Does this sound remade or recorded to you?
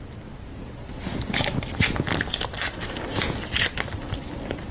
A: recorded